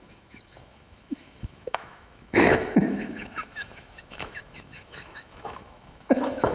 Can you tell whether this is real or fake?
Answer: fake